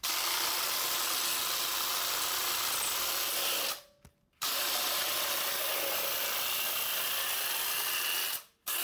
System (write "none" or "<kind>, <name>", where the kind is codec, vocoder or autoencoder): none